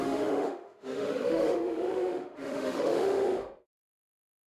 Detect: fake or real fake